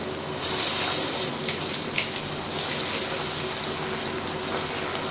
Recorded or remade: recorded